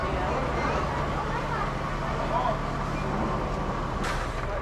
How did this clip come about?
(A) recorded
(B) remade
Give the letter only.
A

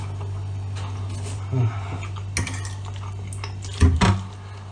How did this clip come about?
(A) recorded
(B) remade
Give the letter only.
A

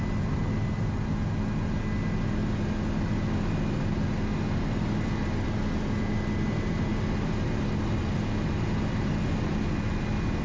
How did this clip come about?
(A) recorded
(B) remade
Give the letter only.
A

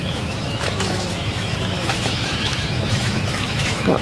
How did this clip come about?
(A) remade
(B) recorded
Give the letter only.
A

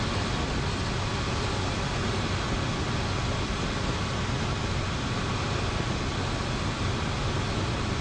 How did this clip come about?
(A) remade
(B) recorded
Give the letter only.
B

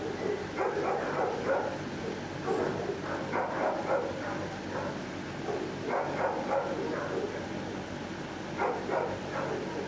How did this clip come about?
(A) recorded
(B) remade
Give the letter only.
A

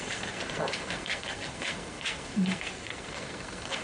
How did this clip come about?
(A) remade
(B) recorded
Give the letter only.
A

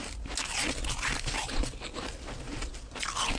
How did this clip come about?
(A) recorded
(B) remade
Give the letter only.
A